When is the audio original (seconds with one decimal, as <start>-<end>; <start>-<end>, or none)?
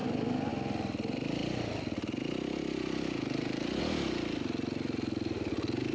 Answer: 0.0-5.9